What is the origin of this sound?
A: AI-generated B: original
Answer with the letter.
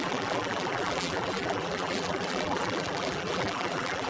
A